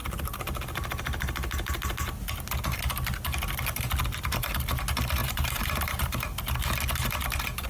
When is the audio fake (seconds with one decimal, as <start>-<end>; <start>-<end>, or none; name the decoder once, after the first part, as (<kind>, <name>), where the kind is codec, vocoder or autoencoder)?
5.2-6.4 (vocoder, BigVGAN v2)